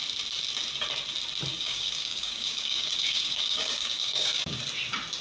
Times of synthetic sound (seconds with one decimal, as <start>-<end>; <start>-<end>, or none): 1.5-4.6